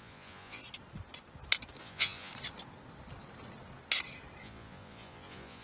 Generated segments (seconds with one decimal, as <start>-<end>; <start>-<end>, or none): 0.0-0.6; 1.8-2.3; 4.4-5.6